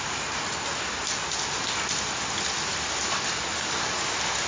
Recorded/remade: recorded